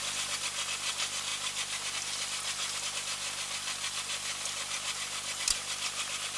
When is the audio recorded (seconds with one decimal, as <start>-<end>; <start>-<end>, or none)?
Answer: 0.0-6.4

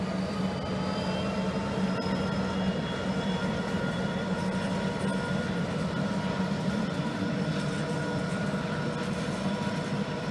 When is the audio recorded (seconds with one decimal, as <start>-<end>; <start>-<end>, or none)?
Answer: 0.0-5.1; 8.7-10.3

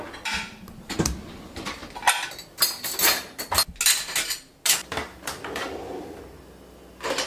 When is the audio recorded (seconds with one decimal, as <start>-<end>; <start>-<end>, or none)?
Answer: 0.0-4.8; 6.2-7.3